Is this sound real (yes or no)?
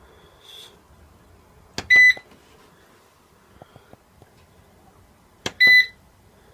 yes